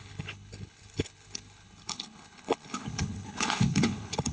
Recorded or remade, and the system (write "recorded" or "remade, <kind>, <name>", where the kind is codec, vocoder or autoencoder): remade, codec, HILCodec